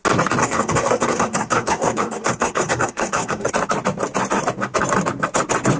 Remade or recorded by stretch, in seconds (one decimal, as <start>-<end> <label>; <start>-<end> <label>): 0.0-0.4 recorded; 0.4-3.5 remade; 3.5-5.8 recorded